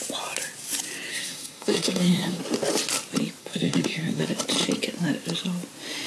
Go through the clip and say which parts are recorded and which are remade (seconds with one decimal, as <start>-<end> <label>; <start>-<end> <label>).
0.0-1.1 recorded; 1.1-2.4 remade; 2.4-3.4 recorded; 3.4-4.2 remade; 4.2-6.1 recorded